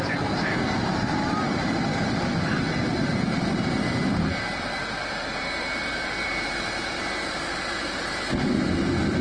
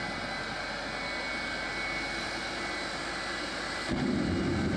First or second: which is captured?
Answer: second